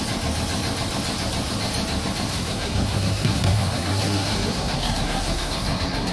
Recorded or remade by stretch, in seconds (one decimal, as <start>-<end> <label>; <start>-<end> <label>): 0.0-2.3 recorded; 2.3-6.1 remade